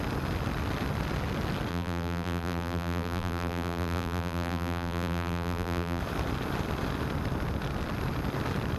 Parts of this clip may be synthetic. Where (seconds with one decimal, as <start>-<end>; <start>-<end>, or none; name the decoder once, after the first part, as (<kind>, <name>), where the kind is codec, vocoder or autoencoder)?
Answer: 1.7-6.0 (vocoder, BigVGAN v2)